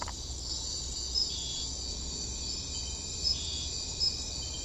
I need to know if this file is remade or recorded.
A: recorded